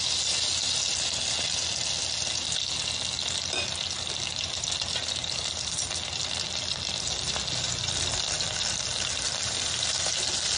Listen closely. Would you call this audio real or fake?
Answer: real